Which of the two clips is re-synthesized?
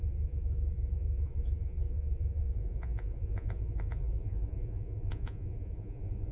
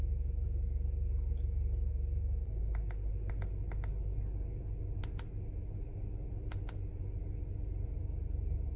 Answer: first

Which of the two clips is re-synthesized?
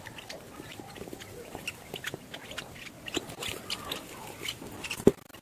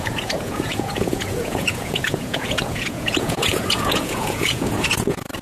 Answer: second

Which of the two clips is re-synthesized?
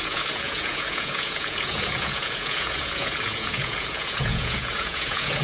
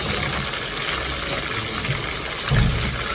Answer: first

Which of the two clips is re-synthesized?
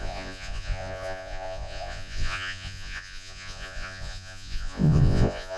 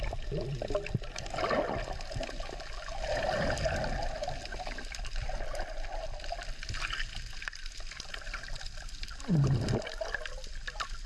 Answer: first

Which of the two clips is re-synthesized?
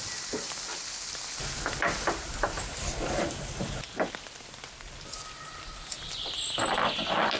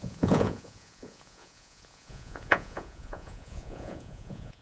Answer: second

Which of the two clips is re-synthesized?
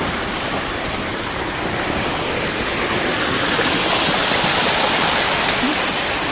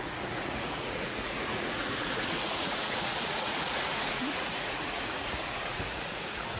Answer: second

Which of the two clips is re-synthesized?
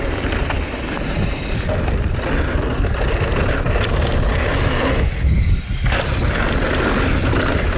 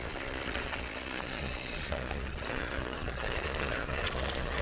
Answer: second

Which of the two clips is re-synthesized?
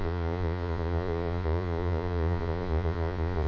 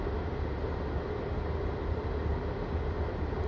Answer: first